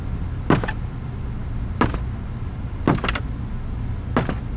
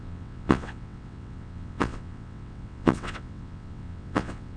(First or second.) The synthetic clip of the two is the second